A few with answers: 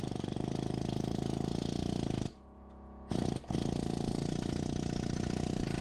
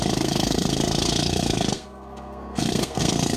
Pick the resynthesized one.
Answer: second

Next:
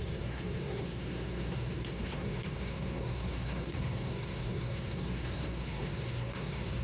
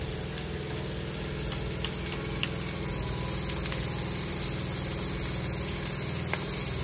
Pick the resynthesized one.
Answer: first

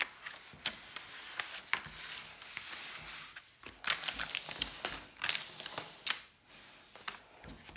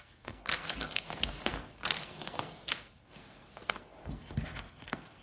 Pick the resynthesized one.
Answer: second